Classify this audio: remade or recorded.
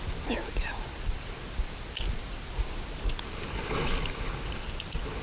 recorded